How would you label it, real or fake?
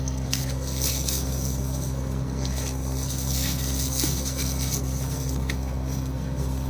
fake